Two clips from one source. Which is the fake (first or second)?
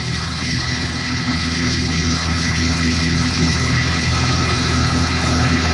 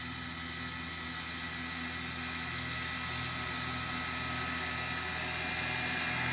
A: first